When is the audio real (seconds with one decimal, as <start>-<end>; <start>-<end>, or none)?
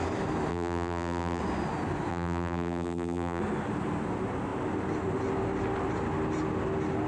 0.0-0.5; 1.4-2.1; 3.4-7.1